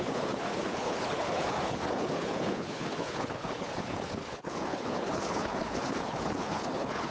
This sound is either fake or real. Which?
fake